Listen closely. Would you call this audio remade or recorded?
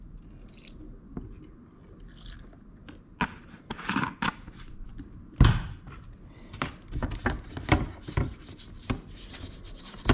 recorded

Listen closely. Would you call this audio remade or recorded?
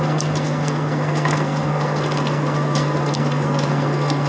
remade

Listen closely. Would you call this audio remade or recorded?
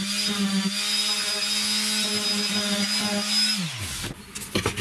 recorded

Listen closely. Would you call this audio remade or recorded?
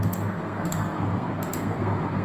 remade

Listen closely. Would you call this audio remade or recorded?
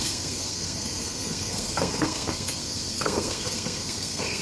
remade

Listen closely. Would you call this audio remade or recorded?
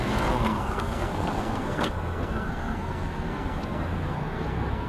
remade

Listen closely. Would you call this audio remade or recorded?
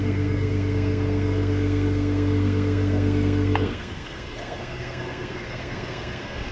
remade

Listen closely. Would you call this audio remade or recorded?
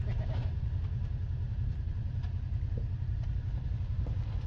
recorded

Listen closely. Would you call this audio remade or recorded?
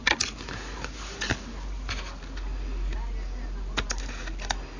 recorded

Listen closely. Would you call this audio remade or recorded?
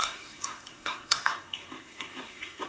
remade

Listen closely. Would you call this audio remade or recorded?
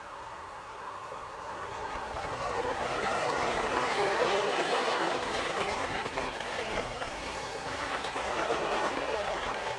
remade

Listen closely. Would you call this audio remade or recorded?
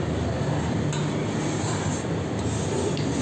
recorded